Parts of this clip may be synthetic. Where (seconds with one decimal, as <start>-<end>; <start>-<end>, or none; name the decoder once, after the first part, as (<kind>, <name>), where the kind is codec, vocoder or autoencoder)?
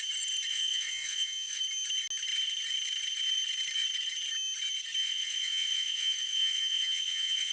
0.5-1.6 (vocoder, WaveNeXt); 5.0-7.5